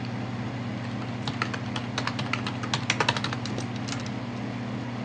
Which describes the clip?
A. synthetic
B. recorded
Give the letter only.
B